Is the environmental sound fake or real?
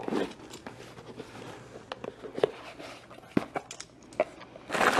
real